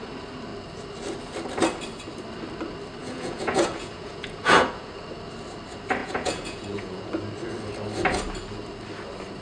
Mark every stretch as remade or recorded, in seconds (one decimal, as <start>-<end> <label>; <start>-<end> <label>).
0.0-3.0 recorded; 3.0-4.9 remade; 4.9-6.0 recorded; 6.0-7.1 remade; 7.1-9.4 recorded

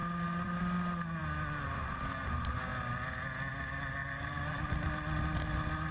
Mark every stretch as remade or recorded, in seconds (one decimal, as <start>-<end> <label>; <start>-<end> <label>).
0.0-0.6 remade; 0.6-4.0 recorded; 4.0-4.6 remade; 4.6-5.9 recorded

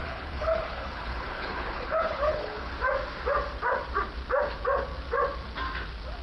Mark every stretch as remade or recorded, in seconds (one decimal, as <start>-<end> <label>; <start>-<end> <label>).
0.0-2.7 remade; 2.7-6.2 recorded

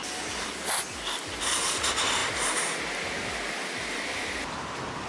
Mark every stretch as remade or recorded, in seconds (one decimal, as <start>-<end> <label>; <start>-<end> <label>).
0.0-5.1 recorded

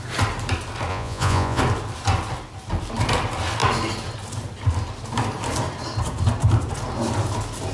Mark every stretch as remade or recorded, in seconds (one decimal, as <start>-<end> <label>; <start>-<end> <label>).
0.0-0.9 recorded; 0.9-1.6 remade; 1.6-7.7 recorded

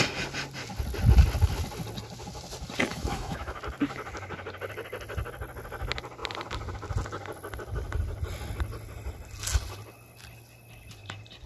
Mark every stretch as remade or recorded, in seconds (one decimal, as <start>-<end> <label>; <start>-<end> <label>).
0.0-2.9 recorded; 2.9-3.6 remade; 3.6-11.5 recorded

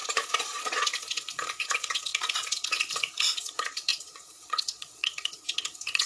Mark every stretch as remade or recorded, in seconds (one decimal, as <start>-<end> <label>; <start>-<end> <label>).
0.0-6.1 remade

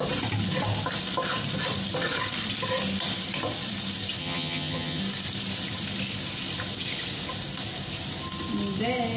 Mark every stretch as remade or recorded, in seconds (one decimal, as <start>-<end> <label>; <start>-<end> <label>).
0.0-4.2 recorded; 4.2-5.0 remade; 5.0-9.2 recorded